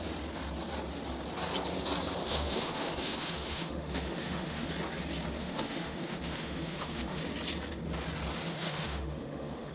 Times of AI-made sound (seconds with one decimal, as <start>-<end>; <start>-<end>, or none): 2.2-4.7; 5.4-7.2; 8.5-9.7